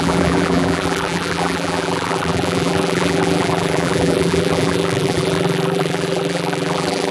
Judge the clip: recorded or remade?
remade